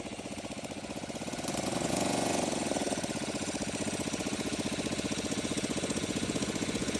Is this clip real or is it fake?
fake